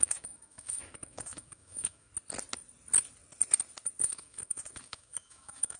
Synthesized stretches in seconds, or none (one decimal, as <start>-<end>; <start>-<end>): 0.0-2.1; 4.0-5.8